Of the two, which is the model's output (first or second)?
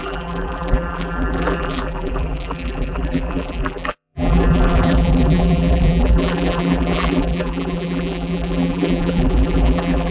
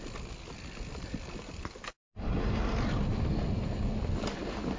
first